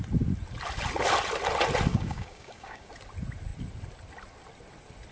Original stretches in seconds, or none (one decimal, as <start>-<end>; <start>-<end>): 0.0-1.9; 2.9-5.1